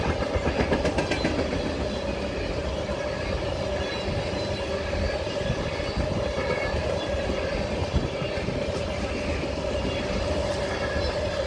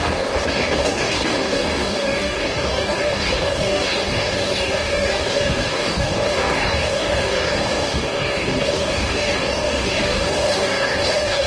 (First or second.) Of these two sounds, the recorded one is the first